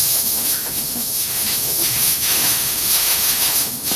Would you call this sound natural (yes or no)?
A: no